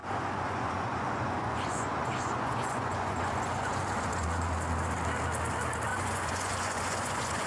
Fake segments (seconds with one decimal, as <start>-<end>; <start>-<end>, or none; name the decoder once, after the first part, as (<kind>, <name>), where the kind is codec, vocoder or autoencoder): 0.0-4.5 (vocoder, Vocos); 5.9-7.5